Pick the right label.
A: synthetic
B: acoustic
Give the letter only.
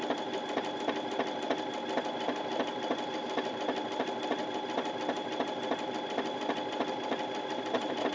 B